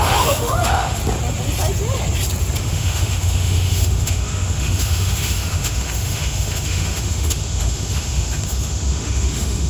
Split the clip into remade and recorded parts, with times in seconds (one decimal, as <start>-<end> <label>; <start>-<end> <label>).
0.0-1.0 remade; 1.0-2.6 recorded; 2.6-9.7 remade